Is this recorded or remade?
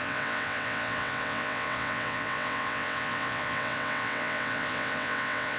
remade